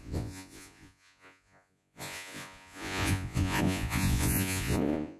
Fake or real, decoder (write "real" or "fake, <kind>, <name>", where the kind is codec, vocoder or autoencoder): fake, vocoder, Vocos